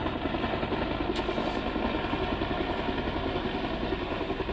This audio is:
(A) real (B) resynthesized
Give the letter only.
A